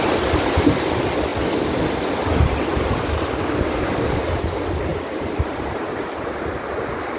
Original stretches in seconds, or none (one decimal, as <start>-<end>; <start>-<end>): 0.0-4.9; 6.7-7.2